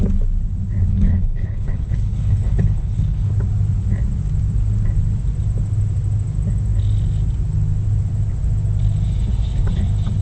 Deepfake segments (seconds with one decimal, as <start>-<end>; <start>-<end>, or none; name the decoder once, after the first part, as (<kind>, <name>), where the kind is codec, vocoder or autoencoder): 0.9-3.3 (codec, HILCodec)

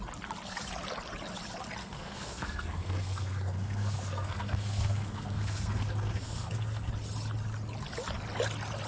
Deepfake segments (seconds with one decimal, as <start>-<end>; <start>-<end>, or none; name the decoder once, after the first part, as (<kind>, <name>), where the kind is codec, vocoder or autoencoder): 1.8-6.9 (codec, SNAC)

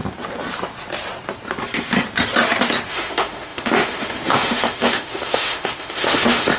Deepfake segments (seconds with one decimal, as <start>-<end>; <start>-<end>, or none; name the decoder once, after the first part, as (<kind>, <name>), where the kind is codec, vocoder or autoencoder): 2.9-6.6 (autoencoder, DAC-VAE)

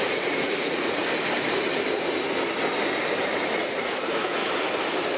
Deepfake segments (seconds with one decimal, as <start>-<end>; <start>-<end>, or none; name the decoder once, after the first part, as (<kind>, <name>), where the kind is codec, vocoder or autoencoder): 0.0-1.0 (vocoder, Vocos); 3.6-4.4